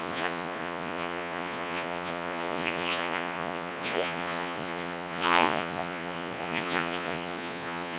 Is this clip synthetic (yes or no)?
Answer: yes